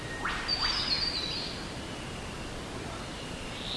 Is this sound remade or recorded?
recorded